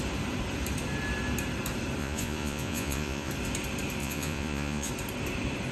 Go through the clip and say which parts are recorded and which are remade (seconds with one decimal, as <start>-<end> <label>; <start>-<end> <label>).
0.0-2.0 recorded; 2.0-3.3 remade; 3.3-4.0 recorded; 4.0-4.9 remade; 4.9-5.7 recorded